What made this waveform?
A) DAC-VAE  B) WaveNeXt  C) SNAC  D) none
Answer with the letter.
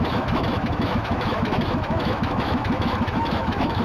A